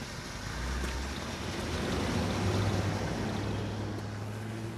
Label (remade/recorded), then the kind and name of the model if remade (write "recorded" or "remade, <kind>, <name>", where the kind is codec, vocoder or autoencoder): recorded